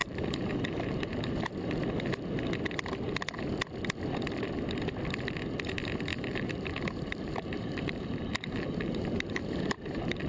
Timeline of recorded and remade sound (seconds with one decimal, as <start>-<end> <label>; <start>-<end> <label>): 0.0-1.3 remade; 1.3-6.1 recorded; 6.1-10.3 remade